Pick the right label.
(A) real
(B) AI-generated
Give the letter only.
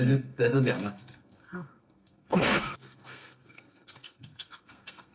B